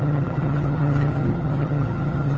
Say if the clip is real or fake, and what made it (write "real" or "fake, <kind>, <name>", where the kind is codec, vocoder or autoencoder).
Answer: fake, vocoder, HiFi-GAN